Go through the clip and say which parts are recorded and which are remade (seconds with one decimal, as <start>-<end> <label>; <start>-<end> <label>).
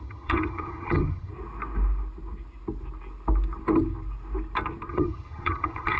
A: 0.0-1.3 remade; 1.3-4.9 recorded; 4.9-6.0 remade